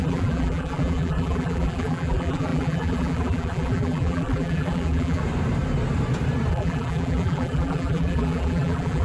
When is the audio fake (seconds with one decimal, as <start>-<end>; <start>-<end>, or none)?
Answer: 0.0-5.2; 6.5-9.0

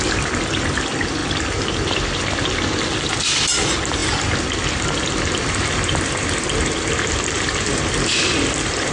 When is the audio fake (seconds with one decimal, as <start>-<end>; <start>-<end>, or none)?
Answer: none

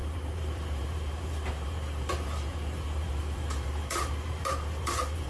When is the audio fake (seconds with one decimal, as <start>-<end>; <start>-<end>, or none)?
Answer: 0.0-5.3

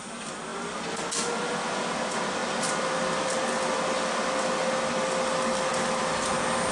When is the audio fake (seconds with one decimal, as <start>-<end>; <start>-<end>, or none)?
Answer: none

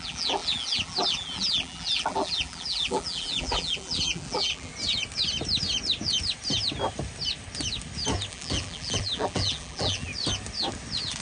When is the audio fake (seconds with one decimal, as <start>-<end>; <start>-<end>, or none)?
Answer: 0.0-4.7; 8.3-10.1

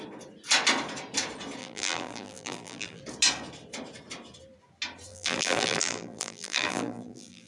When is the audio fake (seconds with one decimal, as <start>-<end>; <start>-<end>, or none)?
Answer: 1.6-3.0; 5.1-7.5

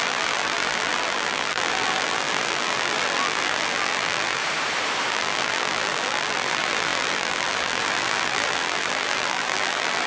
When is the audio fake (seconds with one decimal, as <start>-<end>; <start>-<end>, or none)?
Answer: 0.0-4.4; 5.1-10.1